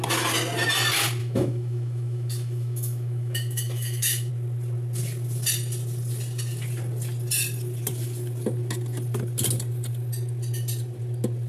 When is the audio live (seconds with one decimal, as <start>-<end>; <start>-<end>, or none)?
0.0-1.2; 4.3-11.5

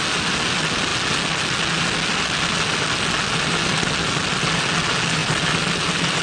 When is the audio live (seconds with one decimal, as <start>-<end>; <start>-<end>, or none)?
0.0-6.2

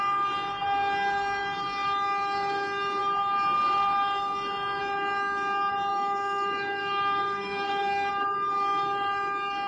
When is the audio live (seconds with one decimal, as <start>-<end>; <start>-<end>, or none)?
0.0-5.9; 8.1-9.7

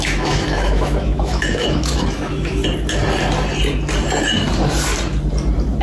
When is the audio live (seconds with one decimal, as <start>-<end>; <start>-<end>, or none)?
2.6-5.8